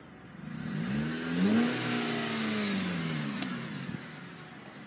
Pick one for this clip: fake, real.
real